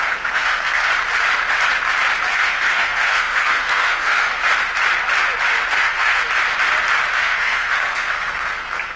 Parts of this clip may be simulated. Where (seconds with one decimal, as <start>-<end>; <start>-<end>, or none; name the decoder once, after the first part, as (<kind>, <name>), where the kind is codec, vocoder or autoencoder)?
0.0-0.9 (codec, SNAC); 2.3-4.3; 5.7-6.2; 7.1-9.0